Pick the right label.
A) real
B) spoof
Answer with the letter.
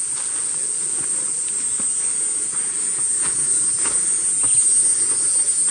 A